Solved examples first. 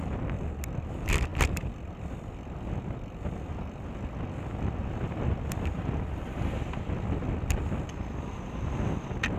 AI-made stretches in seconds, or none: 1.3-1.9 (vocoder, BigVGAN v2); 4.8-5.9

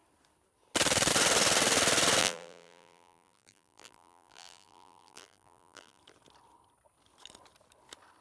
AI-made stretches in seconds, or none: 2.2-6.0 (vocoder, BigVGAN v2)

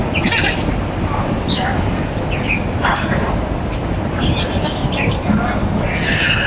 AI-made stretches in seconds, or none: 2.9-5.0 (vocoder, BigVGAN v2)

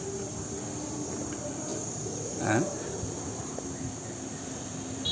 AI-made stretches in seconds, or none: 1.7-3.8 (vocoder, BigVGAN v2)

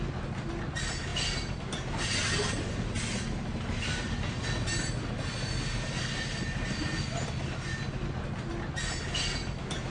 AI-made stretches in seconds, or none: none